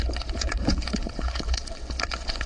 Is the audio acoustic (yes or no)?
no